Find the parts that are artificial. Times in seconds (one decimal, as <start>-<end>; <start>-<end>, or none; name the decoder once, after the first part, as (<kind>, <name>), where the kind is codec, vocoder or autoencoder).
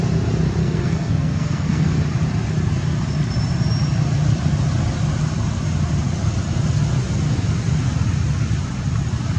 0.6-2.0 (codec, SNAC)